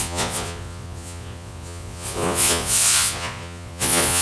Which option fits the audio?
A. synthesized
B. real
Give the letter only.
A